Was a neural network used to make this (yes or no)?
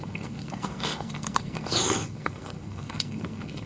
yes